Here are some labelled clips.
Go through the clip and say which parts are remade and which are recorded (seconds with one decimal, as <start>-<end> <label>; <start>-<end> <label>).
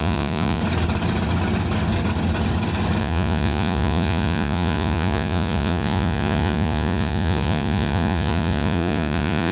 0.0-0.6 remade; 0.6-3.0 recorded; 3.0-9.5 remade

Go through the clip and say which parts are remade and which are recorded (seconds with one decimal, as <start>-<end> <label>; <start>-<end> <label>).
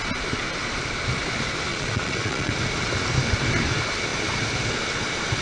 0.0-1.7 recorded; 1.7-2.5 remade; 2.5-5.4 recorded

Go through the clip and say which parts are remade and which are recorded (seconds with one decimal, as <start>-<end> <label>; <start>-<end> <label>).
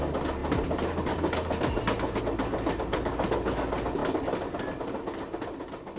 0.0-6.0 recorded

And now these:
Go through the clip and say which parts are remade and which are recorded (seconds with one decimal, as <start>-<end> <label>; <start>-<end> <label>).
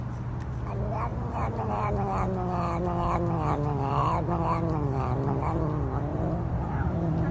0.0-1.1 recorded; 1.1-1.9 remade; 1.9-6.1 recorded; 6.1-7.3 remade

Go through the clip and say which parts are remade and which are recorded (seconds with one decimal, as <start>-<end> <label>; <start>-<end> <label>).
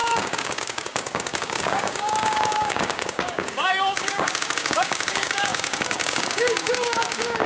0.0-7.5 remade